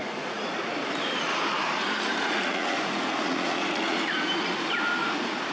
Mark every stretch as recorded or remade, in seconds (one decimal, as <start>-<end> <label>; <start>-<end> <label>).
0.0-0.7 remade; 0.7-1.3 recorded; 1.3-4.6 remade; 4.6-5.0 recorded; 5.0-5.5 remade